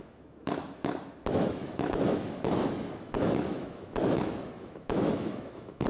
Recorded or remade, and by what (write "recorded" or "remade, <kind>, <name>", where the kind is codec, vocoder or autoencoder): remade, autoencoder, DAC-VAE